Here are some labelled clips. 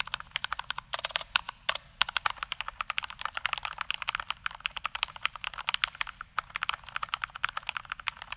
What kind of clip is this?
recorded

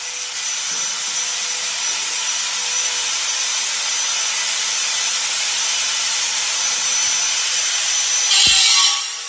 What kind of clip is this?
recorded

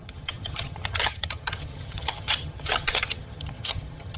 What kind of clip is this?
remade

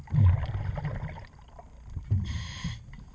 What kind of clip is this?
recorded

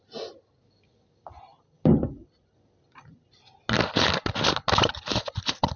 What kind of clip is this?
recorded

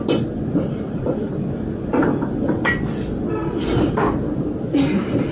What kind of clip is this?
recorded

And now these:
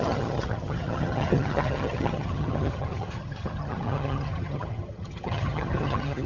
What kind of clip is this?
remade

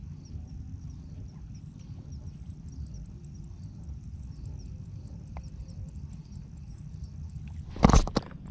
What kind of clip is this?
recorded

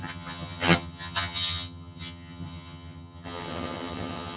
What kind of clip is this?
remade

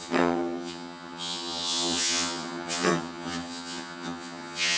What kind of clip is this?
remade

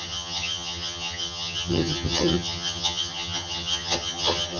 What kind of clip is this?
remade